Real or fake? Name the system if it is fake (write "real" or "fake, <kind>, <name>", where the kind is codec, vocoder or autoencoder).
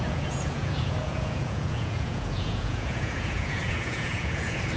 fake, vocoder, Vocos